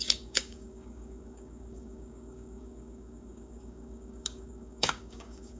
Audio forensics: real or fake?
fake